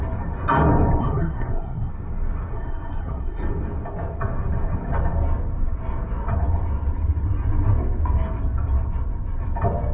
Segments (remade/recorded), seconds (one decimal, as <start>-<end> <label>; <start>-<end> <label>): 0.0-1.0 recorded; 1.0-1.9 remade; 1.9-2.5 recorded; 2.5-3.4 remade; 3.4-9.9 recorded